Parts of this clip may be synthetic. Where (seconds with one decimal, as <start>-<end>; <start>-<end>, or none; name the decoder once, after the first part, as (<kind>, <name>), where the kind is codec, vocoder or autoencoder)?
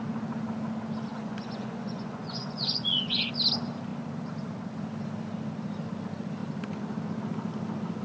1.1-3.3 (vocoder, Vocos)